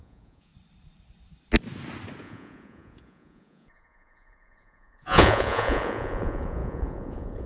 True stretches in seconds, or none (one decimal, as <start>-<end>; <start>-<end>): 0.5-2.2